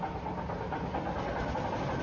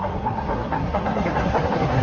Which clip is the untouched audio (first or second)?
first